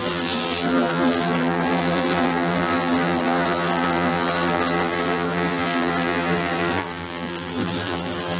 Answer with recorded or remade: remade